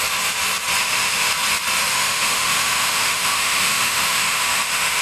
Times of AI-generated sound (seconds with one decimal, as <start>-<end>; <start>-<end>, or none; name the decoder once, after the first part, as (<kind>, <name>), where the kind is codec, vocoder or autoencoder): 0.8-1.3 (autoencoder, DAC-VAE); 1.9-5.0

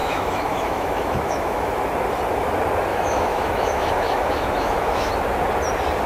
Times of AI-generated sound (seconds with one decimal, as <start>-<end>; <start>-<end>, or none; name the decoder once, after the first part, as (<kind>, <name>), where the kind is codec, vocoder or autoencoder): 0.0-1.7 (autoencoder, DAC-VAE); 2.9-5.1

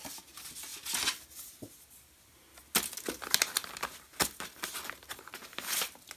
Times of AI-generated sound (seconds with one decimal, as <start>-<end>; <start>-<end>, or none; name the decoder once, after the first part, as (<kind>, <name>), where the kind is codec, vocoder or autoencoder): none

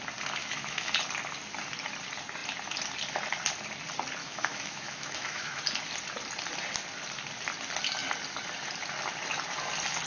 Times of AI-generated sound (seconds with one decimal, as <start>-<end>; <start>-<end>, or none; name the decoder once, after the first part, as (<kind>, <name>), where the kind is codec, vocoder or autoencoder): 0.4-1.0 (autoencoder, DAC-VAE); 4.2-5.6

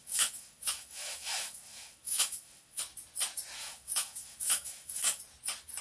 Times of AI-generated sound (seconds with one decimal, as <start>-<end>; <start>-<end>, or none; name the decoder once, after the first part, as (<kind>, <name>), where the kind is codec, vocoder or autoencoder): 0.0-2.8 (autoencoder, DAC-VAE); 3.6-5.2

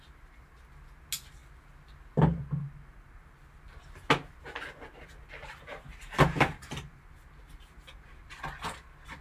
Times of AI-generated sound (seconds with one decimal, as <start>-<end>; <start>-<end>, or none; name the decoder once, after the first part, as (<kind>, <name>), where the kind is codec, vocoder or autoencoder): none

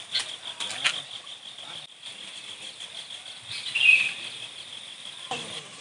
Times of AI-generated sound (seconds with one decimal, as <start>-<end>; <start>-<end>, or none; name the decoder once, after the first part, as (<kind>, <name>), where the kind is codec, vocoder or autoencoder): none

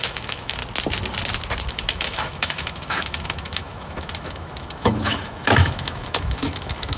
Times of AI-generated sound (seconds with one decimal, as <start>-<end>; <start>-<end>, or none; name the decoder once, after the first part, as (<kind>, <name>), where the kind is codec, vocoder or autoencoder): 0.0-0.6 (autoencoder, DAC-VAE); 1.7-7.0